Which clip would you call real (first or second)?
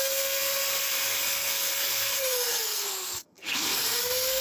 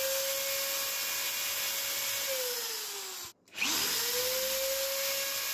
second